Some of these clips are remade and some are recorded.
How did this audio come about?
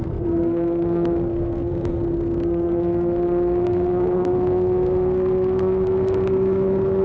remade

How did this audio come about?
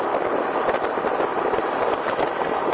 recorded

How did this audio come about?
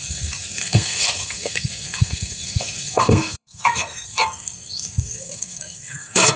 remade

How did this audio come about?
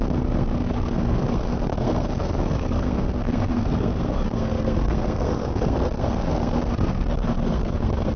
remade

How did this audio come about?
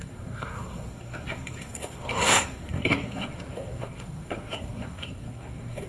remade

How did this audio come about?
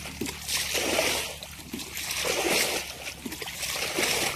recorded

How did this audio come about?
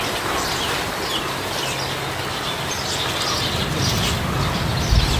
recorded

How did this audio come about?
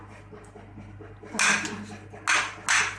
recorded